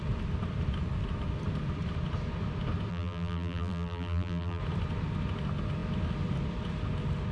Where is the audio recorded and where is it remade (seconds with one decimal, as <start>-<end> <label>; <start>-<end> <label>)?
0.0-2.9 recorded; 2.9-4.6 remade; 4.6-7.3 recorded